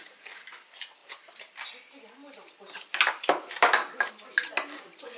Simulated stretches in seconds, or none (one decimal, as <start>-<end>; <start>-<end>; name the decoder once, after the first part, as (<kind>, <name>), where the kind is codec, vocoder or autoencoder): none